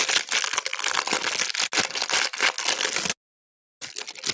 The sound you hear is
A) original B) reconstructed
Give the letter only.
A